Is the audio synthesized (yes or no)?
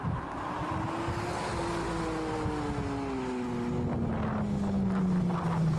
no